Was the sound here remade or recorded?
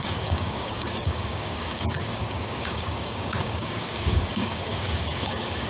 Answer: remade